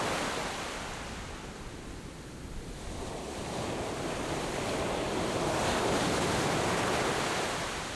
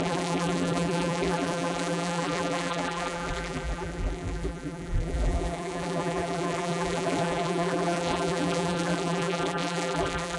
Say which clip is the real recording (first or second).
first